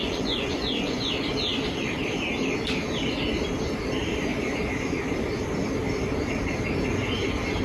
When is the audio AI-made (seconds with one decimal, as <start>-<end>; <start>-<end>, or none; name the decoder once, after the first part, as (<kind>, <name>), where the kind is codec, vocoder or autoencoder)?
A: 0.0-1.1 (vocoder, Vocos)